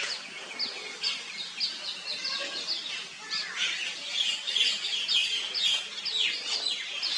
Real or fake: real